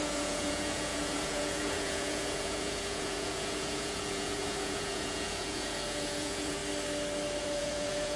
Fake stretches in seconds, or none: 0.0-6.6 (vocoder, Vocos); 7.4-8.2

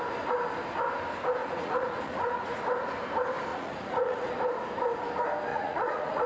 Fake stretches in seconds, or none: 1.4-2.6 (vocoder, Vocos); 3.5-4.3; 5.5-6.3

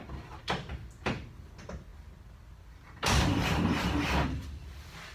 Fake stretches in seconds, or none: none

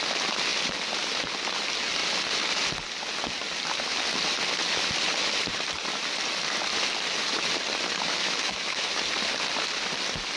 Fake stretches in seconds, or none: 8.2-8.9 (autoencoder, DAC-VAE)

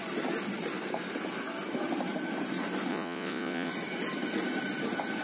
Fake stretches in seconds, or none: 2.9-3.7 (vocoder, Vocos)